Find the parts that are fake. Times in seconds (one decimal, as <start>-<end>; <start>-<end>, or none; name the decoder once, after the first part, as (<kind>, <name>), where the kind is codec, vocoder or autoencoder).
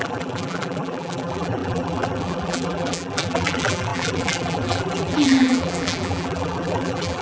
0.0-7.2 (vocoder, BigVGAN v2)